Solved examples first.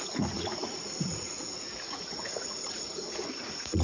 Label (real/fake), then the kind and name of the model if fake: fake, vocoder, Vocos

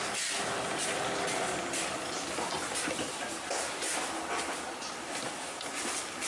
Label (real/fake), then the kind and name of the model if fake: real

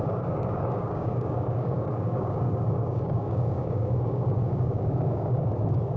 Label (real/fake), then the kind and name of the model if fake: fake, codec, DAC